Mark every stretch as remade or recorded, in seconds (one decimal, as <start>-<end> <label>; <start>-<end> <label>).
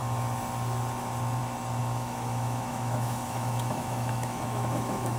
0.0-1.8 recorded; 1.8-5.2 remade